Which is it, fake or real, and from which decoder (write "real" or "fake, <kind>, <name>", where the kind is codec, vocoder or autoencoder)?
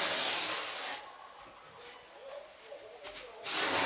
real